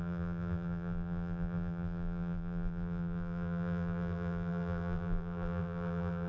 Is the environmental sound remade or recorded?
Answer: remade